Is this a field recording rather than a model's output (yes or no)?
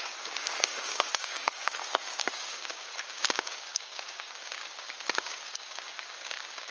no